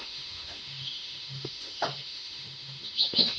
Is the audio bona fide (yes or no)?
no